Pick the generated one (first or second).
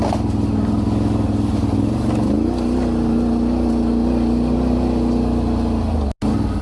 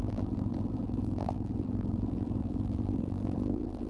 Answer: second